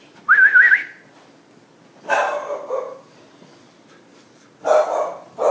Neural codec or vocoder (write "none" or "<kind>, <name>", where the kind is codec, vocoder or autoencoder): none